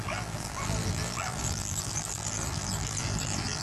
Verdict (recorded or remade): remade